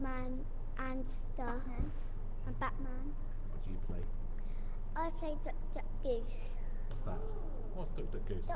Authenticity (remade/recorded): recorded